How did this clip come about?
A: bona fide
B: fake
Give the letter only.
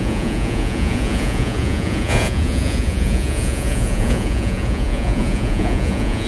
B